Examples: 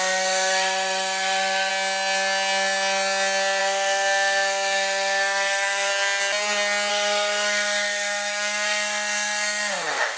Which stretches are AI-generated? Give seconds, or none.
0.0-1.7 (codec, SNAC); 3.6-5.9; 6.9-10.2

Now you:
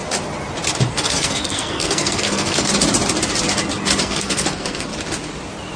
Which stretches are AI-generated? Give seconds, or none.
0.9-2.7 (codec, SNAC); 4.0-4.9